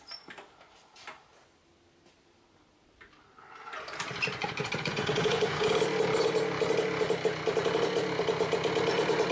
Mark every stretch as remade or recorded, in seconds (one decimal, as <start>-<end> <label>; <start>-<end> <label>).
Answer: 0.0-4.4 recorded; 4.4-5.7 remade; 5.7-9.3 recorded